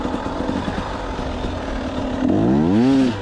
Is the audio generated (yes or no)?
no